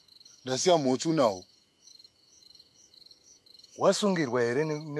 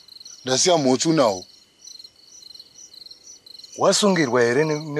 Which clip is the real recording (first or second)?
second